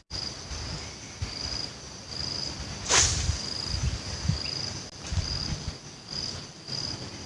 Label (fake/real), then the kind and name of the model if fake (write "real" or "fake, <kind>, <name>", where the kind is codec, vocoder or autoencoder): real